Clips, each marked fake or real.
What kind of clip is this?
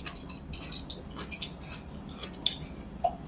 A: real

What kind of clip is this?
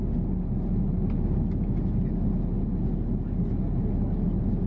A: real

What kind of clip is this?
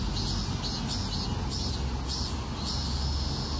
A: real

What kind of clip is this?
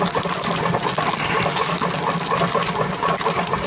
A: real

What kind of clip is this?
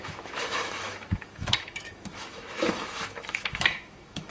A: fake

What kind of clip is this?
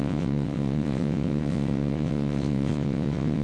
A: fake